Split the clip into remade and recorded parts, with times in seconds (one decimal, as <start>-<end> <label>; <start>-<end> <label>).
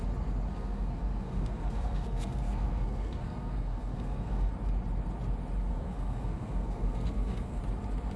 0.0-0.5 recorded; 0.5-4.5 remade; 4.5-5.7 recorded; 5.7-7.6 remade; 7.6-8.2 recorded